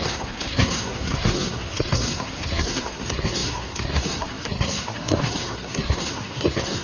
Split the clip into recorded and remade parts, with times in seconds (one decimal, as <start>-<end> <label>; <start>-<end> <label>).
0.0-6.8 remade